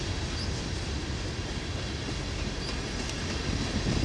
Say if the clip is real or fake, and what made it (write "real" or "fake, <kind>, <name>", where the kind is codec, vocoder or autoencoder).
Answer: real